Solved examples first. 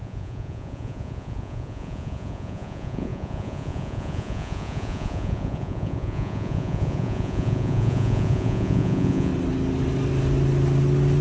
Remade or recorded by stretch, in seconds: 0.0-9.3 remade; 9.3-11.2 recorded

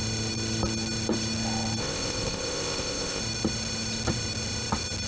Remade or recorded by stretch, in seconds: 0.0-1.8 recorded; 1.8-3.2 remade; 3.2-5.1 recorded

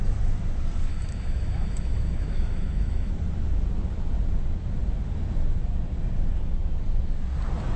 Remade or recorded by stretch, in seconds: 0.0-0.9 recorded; 0.9-3.1 remade; 3.1-7.8 recorded